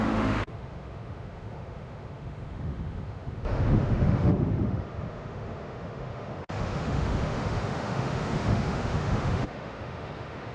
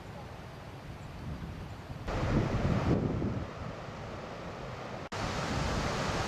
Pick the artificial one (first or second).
first